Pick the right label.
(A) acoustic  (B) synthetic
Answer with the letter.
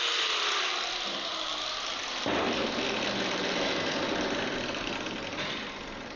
A